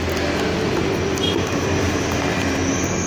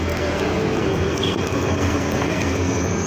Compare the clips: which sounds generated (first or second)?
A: second